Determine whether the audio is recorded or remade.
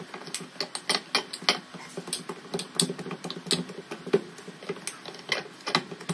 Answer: recorded